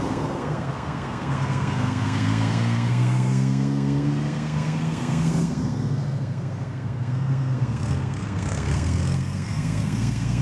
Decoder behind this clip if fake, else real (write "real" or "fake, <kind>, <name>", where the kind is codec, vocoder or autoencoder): fake, codec, SNAC